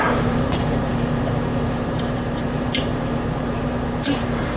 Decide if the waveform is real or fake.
fake